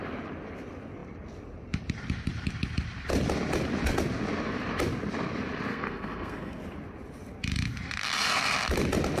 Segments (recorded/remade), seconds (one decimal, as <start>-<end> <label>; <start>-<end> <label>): 0.0-5.7 recorded; 5.7-6.6 remade; 6.6-9.2 recorded